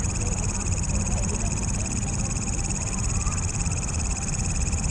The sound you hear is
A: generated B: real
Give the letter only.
A